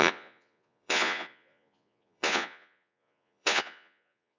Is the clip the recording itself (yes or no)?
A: no